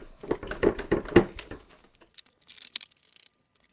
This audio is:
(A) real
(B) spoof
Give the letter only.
A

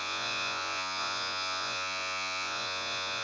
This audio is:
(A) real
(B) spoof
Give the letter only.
B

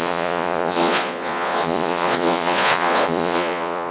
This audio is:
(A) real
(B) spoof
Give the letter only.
B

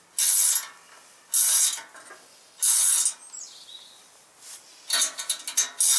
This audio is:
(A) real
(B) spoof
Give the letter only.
A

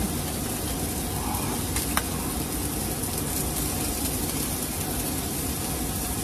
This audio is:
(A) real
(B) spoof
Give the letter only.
A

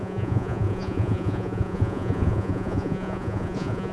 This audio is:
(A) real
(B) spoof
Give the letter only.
B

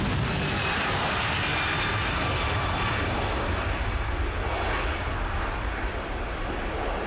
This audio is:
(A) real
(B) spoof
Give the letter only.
A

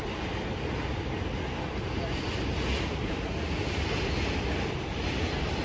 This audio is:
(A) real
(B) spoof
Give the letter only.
A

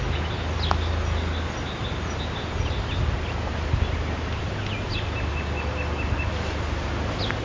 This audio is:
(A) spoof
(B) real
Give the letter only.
B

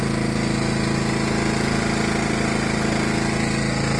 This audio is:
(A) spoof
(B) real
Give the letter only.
B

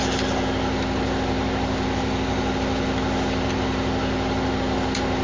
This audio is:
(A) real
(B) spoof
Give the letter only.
A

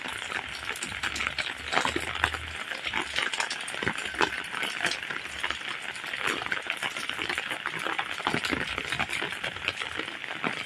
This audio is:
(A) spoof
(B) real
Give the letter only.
B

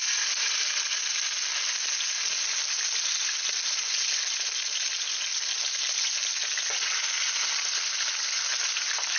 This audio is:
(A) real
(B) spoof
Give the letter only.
A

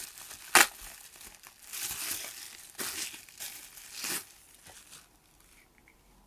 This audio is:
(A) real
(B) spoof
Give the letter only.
A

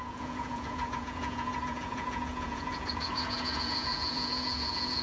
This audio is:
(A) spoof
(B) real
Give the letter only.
A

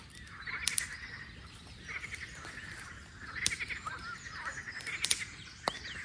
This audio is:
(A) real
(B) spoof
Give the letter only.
A